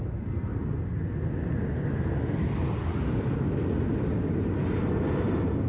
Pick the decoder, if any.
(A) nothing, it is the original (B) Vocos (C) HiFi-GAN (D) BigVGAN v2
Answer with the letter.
A